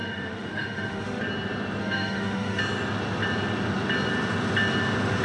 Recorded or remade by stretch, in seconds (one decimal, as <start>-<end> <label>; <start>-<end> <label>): 0.0-1.2 remade; 1.2-1.8 recorded; 1.8-2.6 remade; 2.6-5.2 recorded